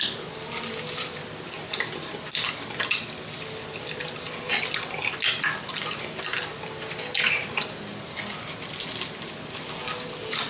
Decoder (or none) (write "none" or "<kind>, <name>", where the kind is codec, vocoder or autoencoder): none